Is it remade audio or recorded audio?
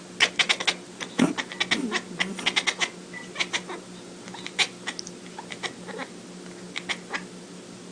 recorded